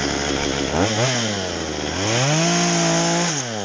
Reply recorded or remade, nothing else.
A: recorded